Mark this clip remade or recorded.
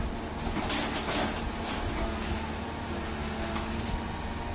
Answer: recorded